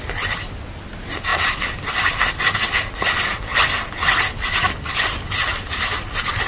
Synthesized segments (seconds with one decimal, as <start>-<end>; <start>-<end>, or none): 1.3-2.2